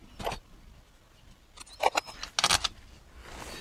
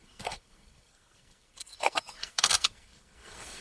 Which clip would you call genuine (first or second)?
first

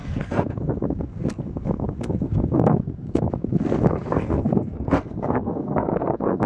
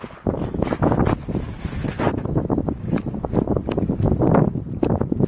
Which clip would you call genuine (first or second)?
second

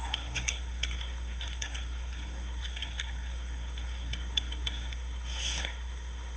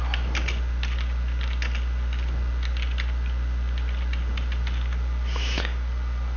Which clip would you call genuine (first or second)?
second